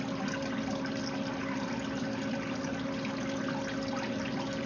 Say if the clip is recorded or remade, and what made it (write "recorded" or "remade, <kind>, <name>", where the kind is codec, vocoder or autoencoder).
recorded